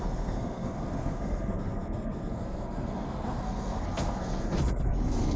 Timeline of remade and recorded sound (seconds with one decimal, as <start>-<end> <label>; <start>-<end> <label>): 0.0-5.4 remade